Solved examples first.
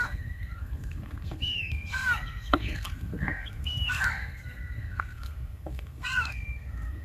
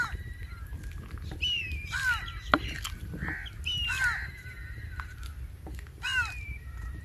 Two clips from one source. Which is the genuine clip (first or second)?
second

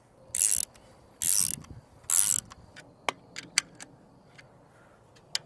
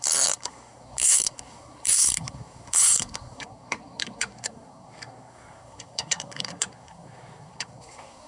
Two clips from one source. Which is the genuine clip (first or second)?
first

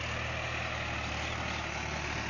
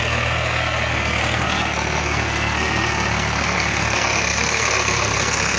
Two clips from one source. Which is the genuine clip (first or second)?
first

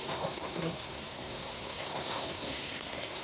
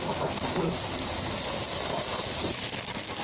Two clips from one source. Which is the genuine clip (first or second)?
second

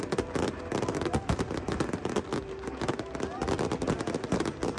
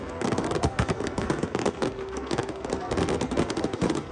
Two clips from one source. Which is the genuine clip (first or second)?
first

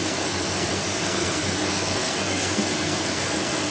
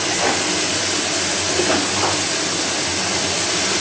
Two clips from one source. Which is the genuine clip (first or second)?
second